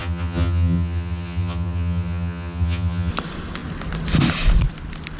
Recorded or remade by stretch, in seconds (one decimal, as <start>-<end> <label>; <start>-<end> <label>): 0.0-3.1 remade; 3.1-5.2 recorded